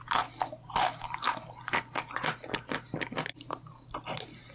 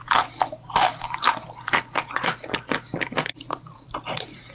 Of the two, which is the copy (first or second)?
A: second